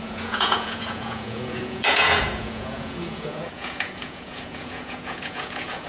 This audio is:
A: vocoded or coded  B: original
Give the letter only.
A